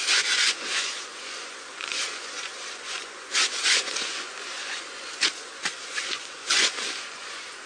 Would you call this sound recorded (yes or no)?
no